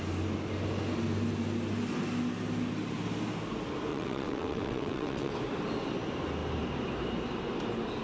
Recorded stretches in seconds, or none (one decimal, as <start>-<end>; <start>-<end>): 0.0-3.9; 5.3-8.0